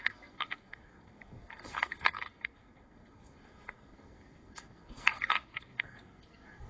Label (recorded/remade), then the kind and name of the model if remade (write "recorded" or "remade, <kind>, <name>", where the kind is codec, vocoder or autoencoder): remade, codec, SNAC